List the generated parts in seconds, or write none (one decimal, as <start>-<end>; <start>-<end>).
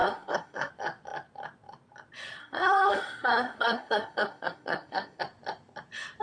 0.0-0.7; 2.4-5.2